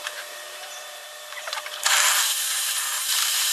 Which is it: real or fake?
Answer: fake